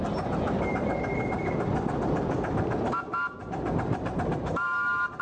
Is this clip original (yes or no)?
yes